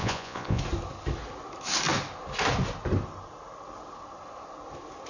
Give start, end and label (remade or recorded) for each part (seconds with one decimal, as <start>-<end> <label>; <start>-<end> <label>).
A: 0.0-0.6 remade; 0.6-5.1 recorded